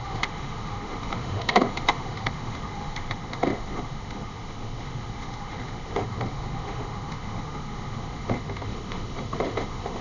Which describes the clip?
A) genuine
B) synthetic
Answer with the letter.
B